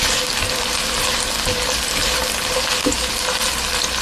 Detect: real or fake real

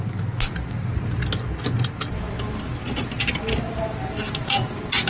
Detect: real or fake real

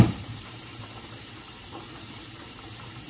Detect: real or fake fake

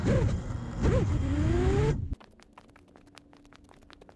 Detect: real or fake real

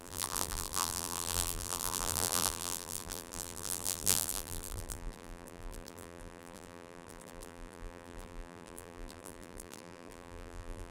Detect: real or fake fake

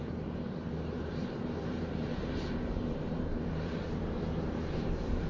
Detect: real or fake fake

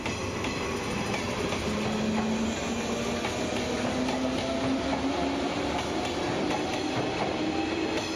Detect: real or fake real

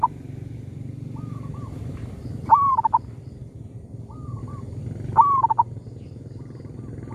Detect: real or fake real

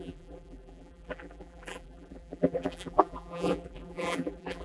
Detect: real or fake fake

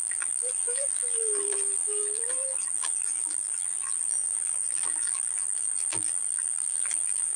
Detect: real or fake fake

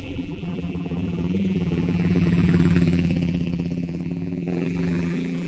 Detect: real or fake fake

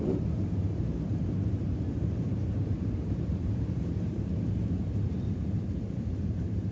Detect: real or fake fake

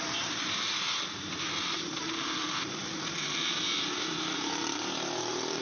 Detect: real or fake fake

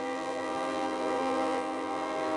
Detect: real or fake fake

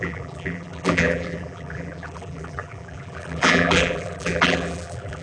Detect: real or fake fake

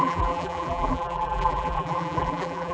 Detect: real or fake fake